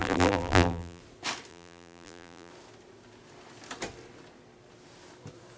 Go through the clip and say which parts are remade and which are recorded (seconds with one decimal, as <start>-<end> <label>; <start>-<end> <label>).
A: 0.0-1.0 remade; 1.0-1.5 recorded; 1.5-2.5 remade; 2.5-5.6 recorded